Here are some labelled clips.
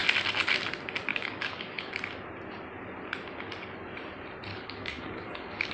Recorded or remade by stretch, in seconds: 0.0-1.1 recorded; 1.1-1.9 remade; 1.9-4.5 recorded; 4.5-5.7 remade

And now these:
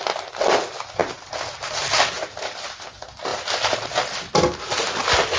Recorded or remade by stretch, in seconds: 0.0-5.4 recorded

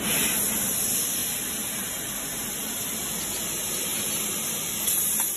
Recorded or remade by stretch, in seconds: 0.0-5.4 recorded

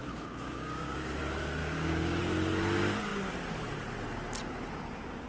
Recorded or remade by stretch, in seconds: 0.0-1.2 remade; 1.2-1.6 recorded; 1.6-2.2 remade; 2.2-5.3 recorded